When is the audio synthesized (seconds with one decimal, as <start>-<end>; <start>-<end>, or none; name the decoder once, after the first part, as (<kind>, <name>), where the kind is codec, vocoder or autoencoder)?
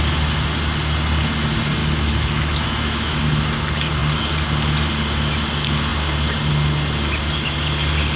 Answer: 1.8-3.2 (autoencoder, DAC-VAE)